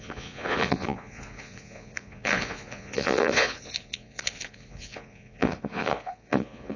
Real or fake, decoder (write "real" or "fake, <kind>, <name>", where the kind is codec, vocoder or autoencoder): fake, vocoder, Vocos